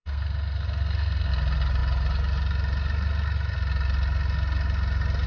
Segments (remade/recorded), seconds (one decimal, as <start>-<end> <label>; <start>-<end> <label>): 0.0-1.3 remade; 1.3-5.3 recorded